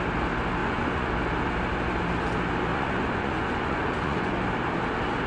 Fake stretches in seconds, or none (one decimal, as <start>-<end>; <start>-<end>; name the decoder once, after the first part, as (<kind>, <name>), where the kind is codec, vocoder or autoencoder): 0.6-1.1 (vocoder, Vocos); 2.7-4.4